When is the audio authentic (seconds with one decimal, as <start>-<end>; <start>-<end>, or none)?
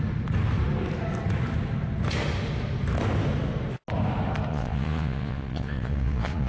0.0-4.5